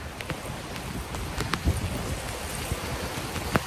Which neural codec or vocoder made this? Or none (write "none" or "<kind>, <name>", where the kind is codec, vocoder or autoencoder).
none